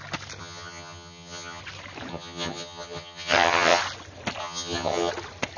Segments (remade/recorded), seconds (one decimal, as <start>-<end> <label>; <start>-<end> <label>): 0.0-0.4 recorded; 0.4-1.6 remade; 1.6-2.1 recorded; 2.1-3.8 remade; 3.8-4.4 recorded; 4.4-5.1 remade; 5.1-5.6 recorded